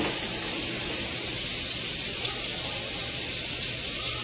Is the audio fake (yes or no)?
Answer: no